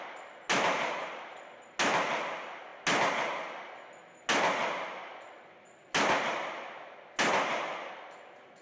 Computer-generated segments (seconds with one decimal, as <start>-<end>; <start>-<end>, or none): none